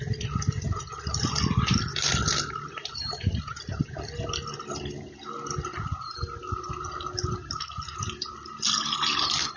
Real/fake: real